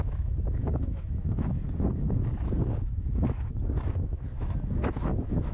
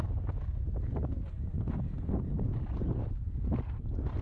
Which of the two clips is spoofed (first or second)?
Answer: first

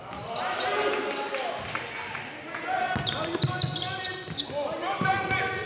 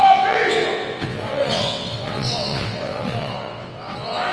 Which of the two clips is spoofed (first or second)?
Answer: second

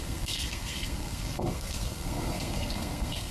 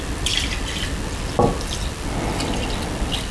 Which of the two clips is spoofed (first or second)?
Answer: first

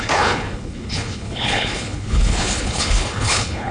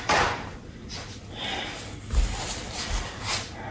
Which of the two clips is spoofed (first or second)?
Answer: first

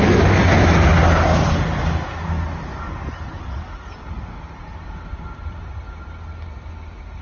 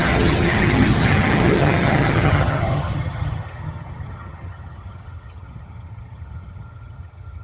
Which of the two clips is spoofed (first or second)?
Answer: second